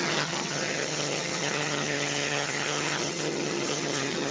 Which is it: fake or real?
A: fake